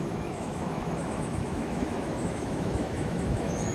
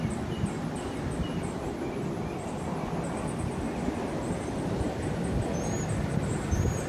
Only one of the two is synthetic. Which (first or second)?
first